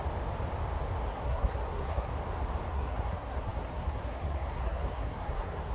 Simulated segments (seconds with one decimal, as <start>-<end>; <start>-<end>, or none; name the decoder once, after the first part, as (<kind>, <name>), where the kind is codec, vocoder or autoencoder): 1.1-2.1 (codec, SNAC); 2.7-5.7